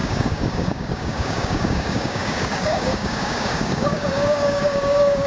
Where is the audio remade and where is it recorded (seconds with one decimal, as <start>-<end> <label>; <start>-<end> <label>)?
0.0-5.3 remade